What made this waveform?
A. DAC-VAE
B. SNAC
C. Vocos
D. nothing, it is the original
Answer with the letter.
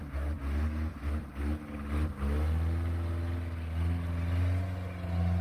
D